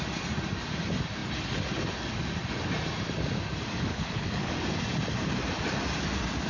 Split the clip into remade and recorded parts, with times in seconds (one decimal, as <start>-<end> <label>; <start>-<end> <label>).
0.0-3.9 recorded; 3.9-4.5 remade; 4.5-6.5 recorded